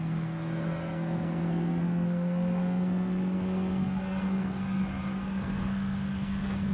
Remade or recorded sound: remade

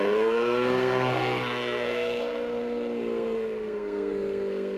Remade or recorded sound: remade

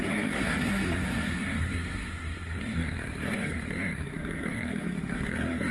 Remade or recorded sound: remade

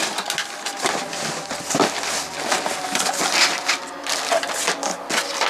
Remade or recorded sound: recorded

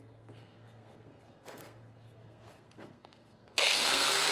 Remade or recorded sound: remade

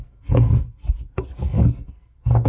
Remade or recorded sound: remade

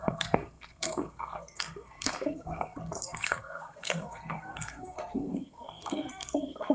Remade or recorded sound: remade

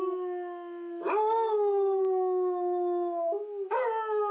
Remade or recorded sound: recorded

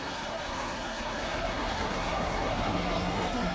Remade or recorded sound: remade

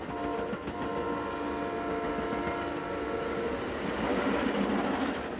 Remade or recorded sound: recorded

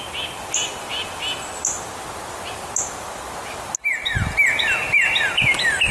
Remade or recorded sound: recorded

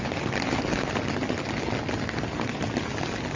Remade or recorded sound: recorded